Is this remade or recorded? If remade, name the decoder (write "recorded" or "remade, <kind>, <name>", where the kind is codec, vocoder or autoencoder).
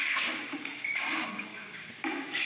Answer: remade, codec, DAC